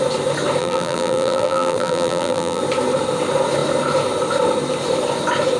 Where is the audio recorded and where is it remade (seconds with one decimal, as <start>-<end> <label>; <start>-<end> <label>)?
0.0-0.6 recorded; 0.6-2.6 remade; 2.6-5.6 recorded